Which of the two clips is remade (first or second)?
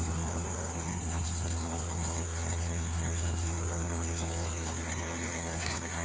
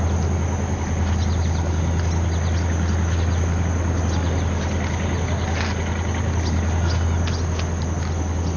first